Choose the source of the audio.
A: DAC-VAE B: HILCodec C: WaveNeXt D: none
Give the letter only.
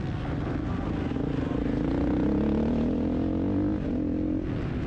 D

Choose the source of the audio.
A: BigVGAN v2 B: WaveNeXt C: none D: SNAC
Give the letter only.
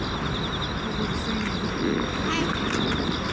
C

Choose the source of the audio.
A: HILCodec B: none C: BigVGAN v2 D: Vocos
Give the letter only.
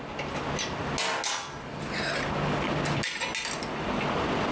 B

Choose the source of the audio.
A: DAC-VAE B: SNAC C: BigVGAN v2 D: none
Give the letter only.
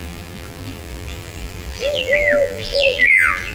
C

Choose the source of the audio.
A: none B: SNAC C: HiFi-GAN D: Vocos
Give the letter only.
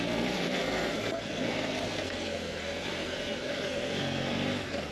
B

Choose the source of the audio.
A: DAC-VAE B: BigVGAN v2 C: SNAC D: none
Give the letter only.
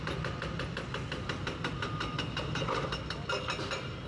D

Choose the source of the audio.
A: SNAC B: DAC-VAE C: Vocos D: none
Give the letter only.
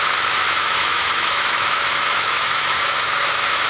B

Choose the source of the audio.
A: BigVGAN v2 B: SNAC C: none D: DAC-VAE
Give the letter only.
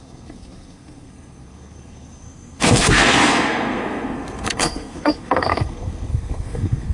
B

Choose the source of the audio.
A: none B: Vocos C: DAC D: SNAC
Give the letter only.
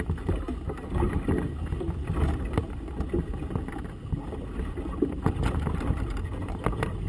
A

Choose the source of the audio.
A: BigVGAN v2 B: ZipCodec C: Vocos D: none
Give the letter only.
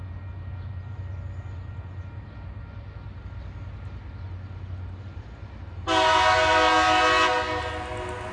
D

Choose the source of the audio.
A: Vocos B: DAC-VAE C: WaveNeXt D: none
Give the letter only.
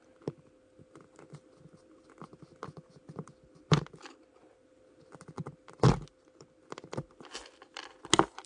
D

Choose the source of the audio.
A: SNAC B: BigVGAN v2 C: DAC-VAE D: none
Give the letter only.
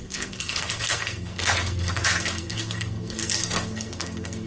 A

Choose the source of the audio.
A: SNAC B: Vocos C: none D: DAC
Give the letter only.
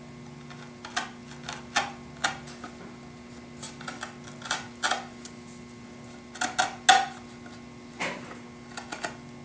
C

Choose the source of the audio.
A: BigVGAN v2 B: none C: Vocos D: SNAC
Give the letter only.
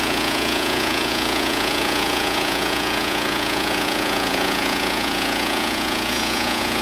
C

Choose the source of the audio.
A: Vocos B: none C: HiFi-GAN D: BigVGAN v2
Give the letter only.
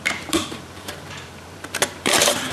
D